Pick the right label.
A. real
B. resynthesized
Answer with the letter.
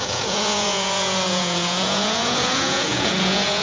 B